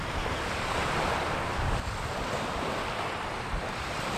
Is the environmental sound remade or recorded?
recorded